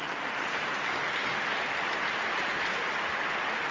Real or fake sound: real